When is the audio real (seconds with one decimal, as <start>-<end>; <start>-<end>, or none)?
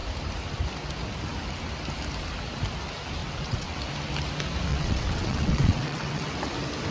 0.0-3.2; 3.8-4.7; 6.3-6.9